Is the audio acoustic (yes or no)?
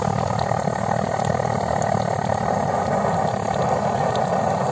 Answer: yes